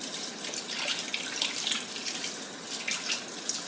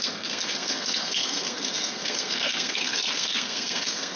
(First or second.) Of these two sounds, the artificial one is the second